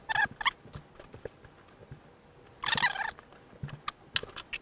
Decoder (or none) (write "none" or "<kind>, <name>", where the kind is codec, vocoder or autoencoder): none